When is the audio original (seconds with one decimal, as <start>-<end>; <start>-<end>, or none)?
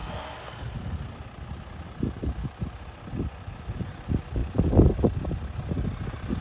0.0-6.4